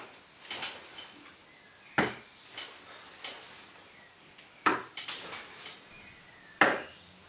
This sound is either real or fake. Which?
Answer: real